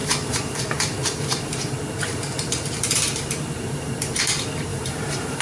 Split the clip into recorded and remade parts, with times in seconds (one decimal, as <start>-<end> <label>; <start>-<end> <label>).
0.0-0.6 remade; 0.6-1.0 recorded; 1.0-4.2 remade; 4.2-4.7 recorded; 4.7-5.4 remade